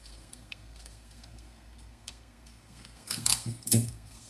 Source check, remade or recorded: remade